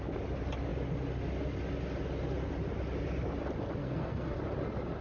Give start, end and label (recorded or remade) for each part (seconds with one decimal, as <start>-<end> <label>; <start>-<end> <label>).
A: 0.0-3.8 recorded; 3.8-4.4 remade; 4.4-5.0 recorded